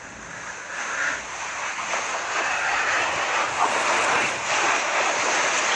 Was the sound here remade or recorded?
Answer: recorded